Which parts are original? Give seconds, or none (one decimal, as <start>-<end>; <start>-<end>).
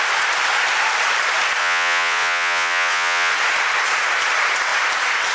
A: 0.0-1.6; 3.3-5.3